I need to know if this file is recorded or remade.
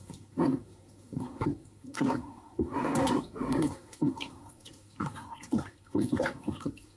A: remade